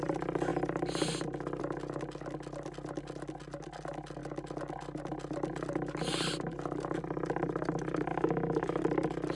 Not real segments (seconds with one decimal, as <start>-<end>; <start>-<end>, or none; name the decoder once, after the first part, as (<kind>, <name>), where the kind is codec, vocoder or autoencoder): 8.1-8.8 (autoencoder, DAC-VAE)